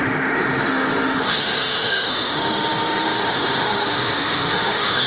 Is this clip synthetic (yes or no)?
yes